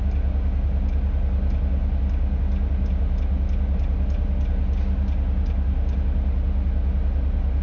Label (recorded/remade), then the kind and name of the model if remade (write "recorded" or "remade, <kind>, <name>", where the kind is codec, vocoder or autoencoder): recorded